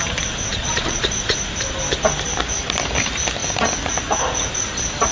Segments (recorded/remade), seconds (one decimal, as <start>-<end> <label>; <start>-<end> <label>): 0.0-0.5 recorded; 0.5-1.4 remade; 1.4-5.1 recorded